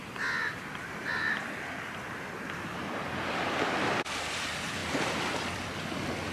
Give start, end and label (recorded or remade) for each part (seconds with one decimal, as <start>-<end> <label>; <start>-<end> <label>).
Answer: 0.0-6.3 recorded